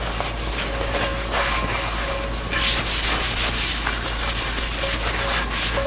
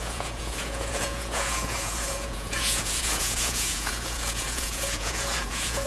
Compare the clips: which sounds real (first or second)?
first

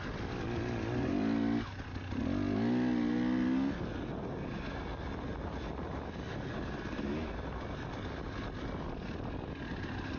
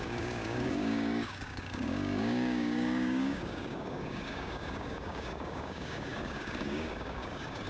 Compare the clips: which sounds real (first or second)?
first